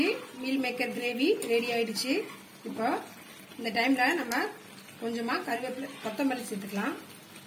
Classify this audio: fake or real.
real